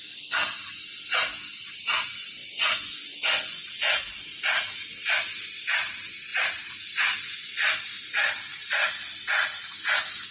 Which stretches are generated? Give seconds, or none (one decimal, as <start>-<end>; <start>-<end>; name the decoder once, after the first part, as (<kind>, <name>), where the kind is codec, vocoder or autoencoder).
2.4-3.6 (vocoder, Vocos)